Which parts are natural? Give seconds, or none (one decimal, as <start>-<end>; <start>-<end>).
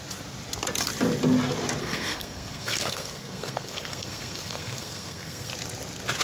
0.0-1.8; 5.5-6.2